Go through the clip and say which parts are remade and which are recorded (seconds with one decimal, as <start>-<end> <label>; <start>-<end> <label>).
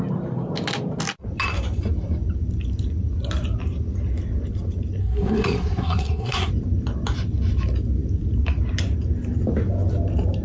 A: 0.0-5.0 recorded; 5.0-6.5 remade; 6.5-10.4 recorded